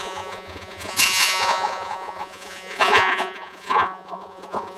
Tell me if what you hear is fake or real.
fake